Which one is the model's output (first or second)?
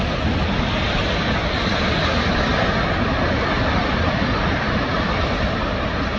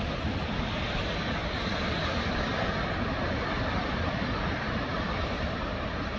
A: second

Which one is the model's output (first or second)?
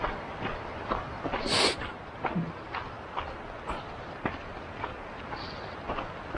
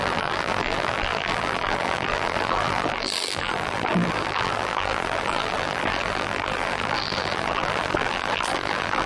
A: second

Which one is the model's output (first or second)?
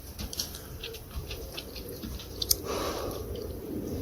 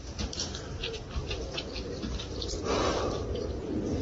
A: first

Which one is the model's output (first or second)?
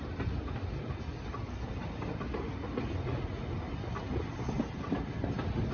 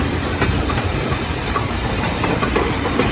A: second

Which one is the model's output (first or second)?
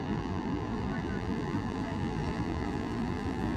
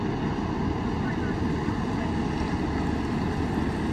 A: first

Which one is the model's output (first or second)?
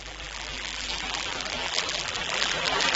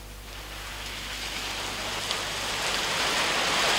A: first